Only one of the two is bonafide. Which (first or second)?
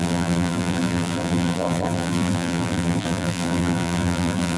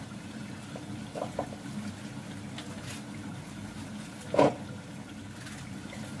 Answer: second